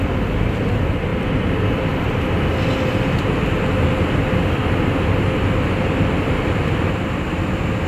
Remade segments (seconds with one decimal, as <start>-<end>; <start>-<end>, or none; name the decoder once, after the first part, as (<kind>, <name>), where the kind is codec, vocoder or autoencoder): none

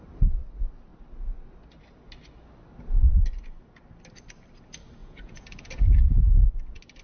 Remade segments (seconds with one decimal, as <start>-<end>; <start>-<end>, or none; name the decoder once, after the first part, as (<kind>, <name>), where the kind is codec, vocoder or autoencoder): 5.0-6.5 (vocoder, Vocos)

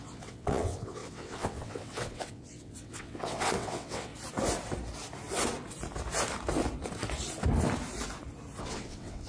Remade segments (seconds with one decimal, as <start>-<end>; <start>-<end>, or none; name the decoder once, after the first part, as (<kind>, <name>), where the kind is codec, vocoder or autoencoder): 0.0-4.1 (vocoder, WaveNeXt); 8.6-9.3

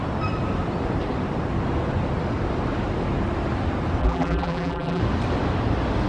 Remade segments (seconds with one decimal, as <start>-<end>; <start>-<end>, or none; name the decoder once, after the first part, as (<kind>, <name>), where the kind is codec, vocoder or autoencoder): 4.0-5.0 (vocoder, BigVGAN v2)

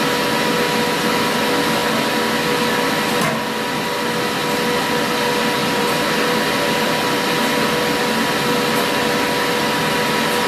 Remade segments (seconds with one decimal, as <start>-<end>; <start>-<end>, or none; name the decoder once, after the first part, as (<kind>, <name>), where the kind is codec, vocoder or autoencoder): 5.6-7.2 (vocoder, BigVGAN v2)

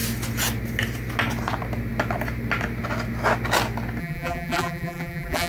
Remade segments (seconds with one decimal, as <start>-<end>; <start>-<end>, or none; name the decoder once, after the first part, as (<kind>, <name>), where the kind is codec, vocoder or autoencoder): 4.0-5.5 (vocoder, BigVGAN v2)